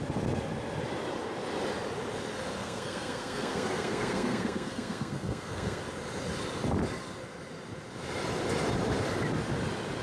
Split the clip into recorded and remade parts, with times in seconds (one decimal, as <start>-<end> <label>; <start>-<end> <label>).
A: 0.0-2.6 recorded; 2.6-5.8 remade; 5.8-10.0 recorded